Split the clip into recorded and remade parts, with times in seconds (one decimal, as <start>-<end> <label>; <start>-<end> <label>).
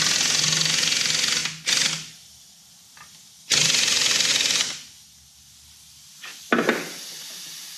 0.0-4.3 recorded; 4.3-5.4 remade; 5.4-6.3 recorded; 6.3-7.2 remade; 7.2-7.8 recorded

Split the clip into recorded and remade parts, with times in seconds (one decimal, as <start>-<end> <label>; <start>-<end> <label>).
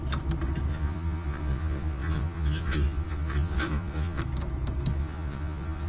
0.0-0.7 recorded; 0.7-4.2 remade; 4.2-4.9 recorded; 4.9-5.9 remade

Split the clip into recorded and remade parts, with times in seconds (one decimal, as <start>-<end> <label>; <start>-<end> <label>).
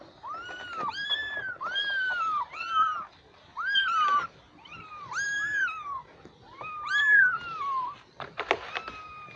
0.0-9.4 recorded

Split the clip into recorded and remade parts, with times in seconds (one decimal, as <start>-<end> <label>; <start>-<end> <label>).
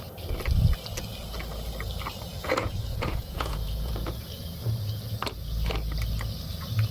0.0-2.3 recorded; 2.3-4.3 remade; 4.3-6.9 recorded